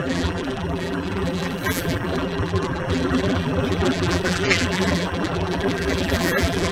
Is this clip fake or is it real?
fake